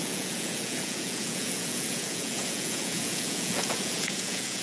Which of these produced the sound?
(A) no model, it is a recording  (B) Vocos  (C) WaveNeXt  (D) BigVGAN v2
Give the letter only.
B